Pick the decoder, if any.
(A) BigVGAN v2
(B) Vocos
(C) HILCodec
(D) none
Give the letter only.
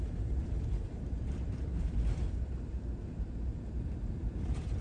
A